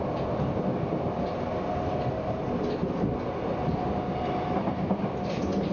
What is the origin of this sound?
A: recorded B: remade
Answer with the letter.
A